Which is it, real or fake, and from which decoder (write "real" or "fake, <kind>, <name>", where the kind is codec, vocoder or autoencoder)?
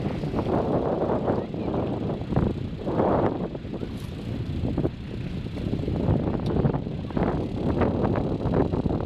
real